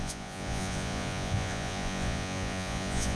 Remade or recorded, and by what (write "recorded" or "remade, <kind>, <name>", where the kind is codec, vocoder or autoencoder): remade, vocoder, Vocos